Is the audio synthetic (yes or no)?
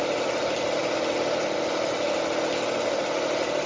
no